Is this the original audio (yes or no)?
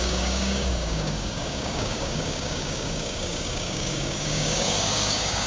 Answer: no